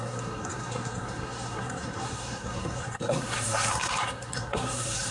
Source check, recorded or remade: remade